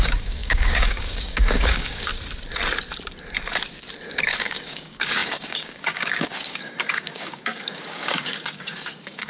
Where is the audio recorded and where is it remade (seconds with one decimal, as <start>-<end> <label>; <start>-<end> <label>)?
0.0-2.1 remade; 2.1-4.1 recorded; 4.1-9.3 remade

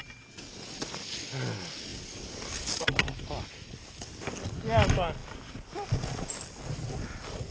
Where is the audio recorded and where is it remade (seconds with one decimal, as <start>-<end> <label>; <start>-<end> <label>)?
0.0-7.5 recorded

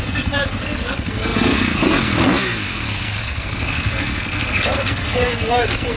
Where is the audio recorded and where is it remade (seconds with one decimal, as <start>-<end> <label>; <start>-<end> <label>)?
0.0-6.0 remade